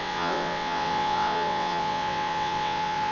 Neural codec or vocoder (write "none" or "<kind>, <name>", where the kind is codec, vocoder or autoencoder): vocoder, WaveNeXt